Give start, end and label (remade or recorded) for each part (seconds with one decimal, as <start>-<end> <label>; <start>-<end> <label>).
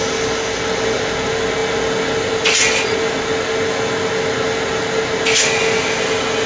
0.0-6.5 recorded